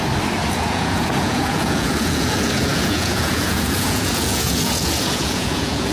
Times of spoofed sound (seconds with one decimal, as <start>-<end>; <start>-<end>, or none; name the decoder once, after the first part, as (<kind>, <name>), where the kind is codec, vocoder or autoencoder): 0.6-5.9 (vocoder, Vocos)